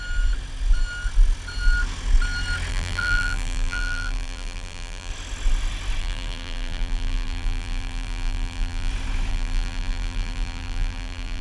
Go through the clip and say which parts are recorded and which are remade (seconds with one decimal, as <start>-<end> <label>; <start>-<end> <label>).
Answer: 0.0-2.7 recorded; 2.7-5.1 remade; 5.1-6.0 recorded; 6.0-8.9 remade; 8.9-9.3 recorded; 9.3-11.4 remade